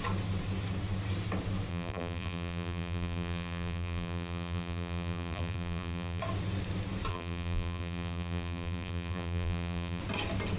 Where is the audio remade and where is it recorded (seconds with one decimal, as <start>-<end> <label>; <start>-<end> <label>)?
0.0-1.7 recorded; 1.7-6.2 remade; 6.2-7.1 recorded; 7.1-10.0 remade; 10.0-10.6 recorded